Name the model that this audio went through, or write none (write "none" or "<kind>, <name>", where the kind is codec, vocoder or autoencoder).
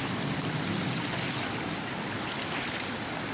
none